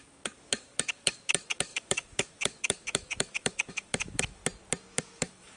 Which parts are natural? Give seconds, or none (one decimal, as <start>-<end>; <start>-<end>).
4.4-5.0